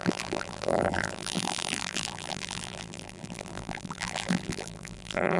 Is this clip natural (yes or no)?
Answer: no